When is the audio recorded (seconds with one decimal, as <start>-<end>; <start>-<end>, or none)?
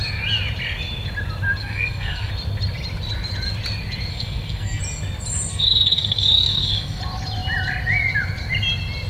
0.0-1.6; 2.3-4.1; 4.8-5.5; 7.0-9.1